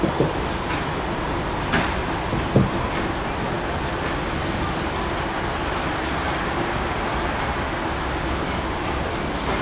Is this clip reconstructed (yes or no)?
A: no